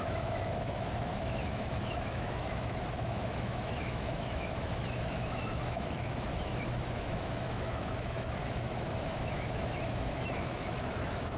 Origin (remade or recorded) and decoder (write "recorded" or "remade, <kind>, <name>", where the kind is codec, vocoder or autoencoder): remade, autoencoder, DAC-VAE